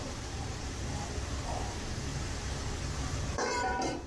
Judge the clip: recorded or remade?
remade